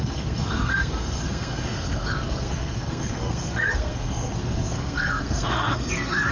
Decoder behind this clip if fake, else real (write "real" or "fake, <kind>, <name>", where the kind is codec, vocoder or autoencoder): fake, codec, SNAC